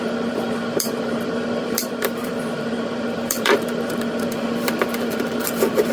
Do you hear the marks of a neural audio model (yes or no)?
yes